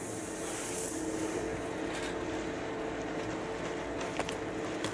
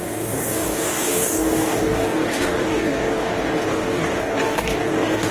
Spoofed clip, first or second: second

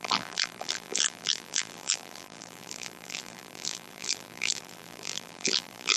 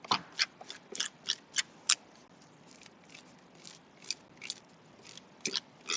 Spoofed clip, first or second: first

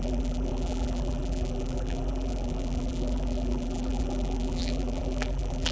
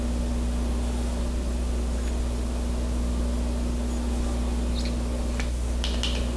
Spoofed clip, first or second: first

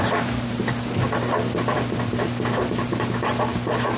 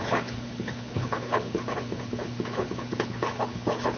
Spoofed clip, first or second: second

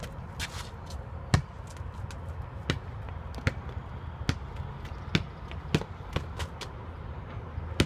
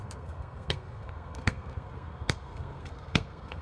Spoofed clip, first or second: second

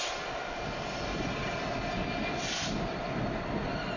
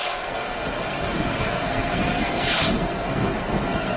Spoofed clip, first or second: second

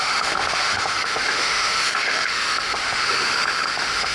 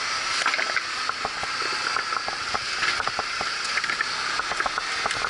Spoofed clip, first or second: first